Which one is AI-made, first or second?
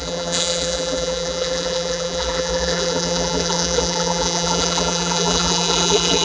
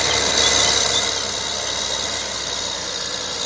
first